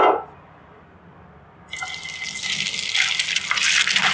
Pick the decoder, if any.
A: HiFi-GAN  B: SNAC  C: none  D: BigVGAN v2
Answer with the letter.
C